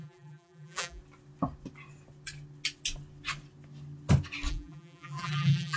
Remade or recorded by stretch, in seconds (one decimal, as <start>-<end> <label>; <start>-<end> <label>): 0.0-1.0 remade; 1.0-4.5 recorded; 4.5-5.8 remade

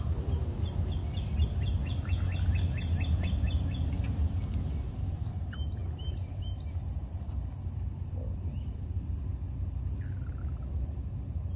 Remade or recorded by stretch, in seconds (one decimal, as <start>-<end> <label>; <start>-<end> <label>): 0.0-11.6 recorded

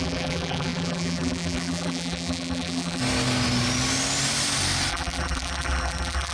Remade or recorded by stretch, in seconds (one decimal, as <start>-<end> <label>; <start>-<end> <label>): 0.0-3.0 remade; 3.0-4.9 recorded; 4.9-6.3 remade

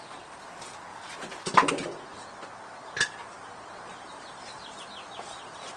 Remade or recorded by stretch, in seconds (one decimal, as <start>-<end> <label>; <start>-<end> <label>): 0.0-0.9 recorded; 0.9-1.7 remade; 1.7-2.1 recorded; 2.1-5.8 remade